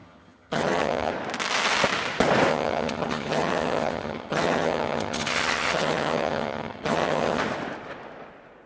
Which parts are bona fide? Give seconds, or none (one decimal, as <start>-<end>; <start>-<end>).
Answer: 1.1-2.5; 7.4-8.7